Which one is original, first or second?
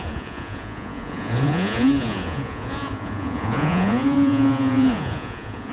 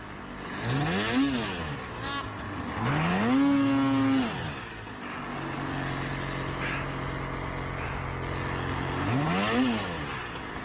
second